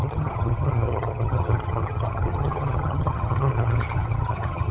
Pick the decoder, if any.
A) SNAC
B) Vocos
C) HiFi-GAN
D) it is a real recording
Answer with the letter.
C